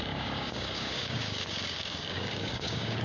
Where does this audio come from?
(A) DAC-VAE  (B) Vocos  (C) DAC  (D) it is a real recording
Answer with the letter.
C